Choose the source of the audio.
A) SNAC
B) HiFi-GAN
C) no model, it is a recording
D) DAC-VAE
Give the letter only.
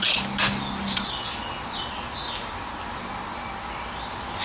C